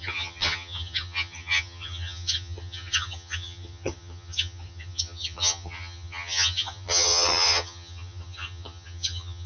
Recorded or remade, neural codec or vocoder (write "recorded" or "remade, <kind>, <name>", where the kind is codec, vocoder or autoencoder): remade, vocoder, HiFi-GAN